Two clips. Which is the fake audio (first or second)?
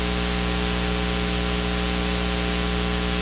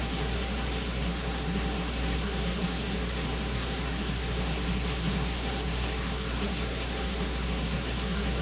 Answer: second